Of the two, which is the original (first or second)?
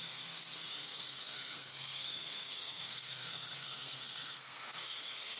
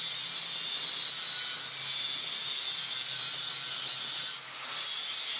second